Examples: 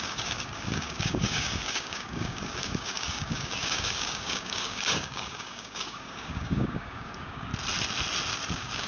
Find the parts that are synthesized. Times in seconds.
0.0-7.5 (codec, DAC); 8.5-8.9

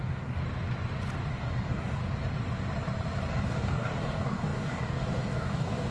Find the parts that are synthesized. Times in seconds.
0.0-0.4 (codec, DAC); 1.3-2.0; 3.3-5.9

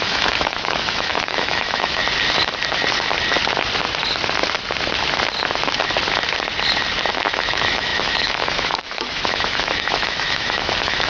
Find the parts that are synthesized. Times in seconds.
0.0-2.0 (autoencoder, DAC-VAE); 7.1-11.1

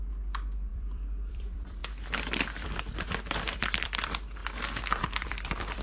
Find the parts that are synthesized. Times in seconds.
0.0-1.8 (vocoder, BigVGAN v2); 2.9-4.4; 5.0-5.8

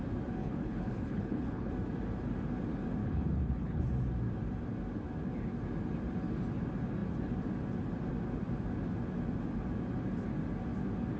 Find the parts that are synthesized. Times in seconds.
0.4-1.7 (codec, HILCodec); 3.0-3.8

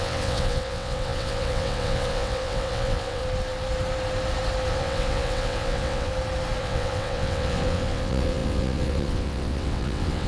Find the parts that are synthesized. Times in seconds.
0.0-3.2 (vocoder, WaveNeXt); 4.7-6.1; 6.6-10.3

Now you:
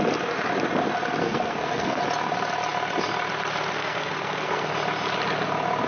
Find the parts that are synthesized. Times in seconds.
1.2-2.0 (codec, SNAC); 3.8-4.7